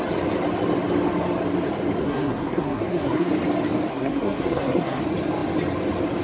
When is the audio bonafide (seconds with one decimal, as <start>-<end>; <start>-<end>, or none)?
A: 0.0-2.0; 3.3-3.9; 5.0-6.2